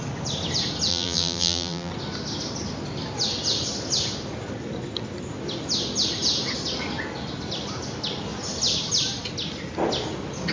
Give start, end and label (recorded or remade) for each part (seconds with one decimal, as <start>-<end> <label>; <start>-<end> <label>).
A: 0.0-0.9 recorded; 0.9-1.9 remade; 1.9-10.5 recorded